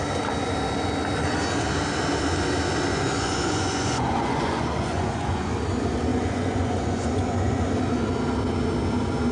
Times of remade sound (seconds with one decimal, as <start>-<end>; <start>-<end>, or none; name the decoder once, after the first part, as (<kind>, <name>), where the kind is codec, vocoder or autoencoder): 2.9-5.5 (vocoder, Vocos); 6.1-7.7